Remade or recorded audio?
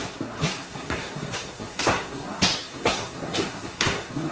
remade